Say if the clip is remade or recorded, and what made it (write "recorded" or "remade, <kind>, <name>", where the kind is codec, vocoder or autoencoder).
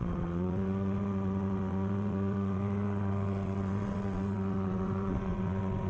remade, vocoder, WaveNeXt